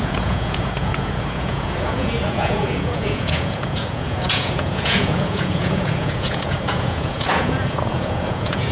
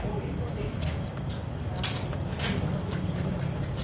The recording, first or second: second